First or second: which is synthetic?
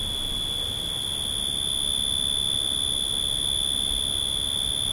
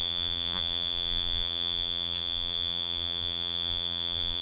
second